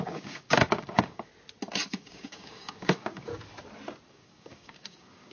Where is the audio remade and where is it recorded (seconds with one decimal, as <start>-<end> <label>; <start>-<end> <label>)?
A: 0.0-1.3 remade; 1.3-1.9 recorded; 1.9-3.3 remade; 3.3-4.1 recorded; 4.1-5.3 remade